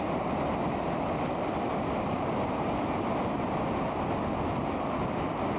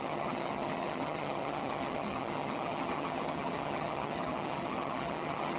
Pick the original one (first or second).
first